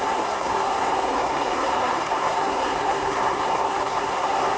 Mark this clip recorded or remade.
remade